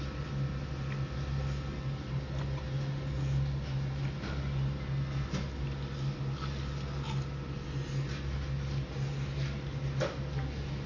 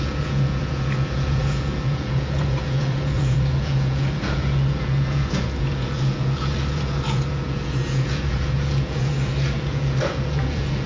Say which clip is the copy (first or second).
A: second